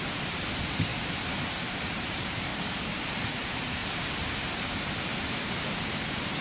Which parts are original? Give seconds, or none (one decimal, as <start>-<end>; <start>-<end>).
2.5-3.0; 3.8-4.7